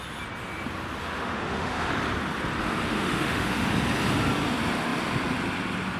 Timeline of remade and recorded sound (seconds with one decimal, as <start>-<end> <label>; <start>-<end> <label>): 0.0-1.0 recorded; 1.0-1.9 remade; 1.9-2.6 recorded; 2.6-3.7 remade; 3.7-6.0 recorded